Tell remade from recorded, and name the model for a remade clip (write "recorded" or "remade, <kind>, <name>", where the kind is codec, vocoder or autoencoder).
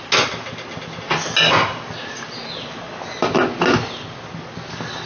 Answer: recorded